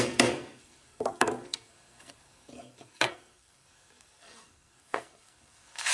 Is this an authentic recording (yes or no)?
no